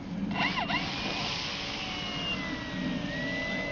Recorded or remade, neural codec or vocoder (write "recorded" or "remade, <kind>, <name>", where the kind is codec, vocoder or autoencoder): recorded